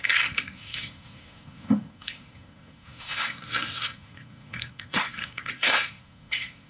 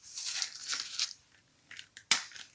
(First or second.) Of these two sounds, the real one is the second